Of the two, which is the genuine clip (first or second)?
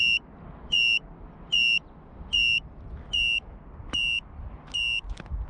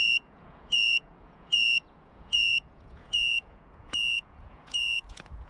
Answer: first